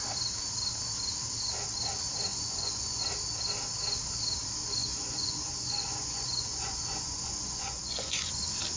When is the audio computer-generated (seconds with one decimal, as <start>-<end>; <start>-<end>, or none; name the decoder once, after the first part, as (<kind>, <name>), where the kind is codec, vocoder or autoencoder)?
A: 2.3-3.0 (vocoder, Vocos); 4.8-8.3